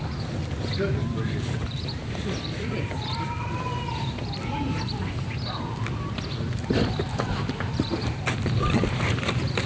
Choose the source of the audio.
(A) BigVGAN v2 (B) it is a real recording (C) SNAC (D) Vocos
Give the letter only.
A